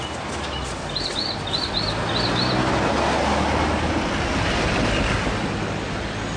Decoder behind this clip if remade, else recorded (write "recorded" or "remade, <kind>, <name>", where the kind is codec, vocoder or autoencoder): recorded